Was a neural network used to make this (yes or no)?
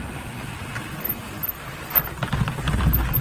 no